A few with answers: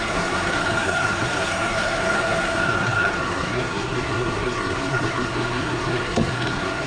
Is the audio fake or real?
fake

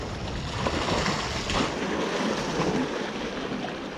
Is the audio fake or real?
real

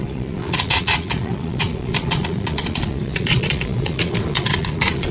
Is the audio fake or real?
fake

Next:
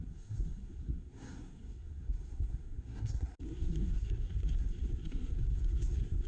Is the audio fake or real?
fake